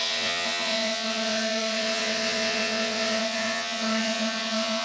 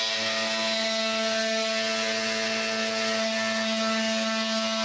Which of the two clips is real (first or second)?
second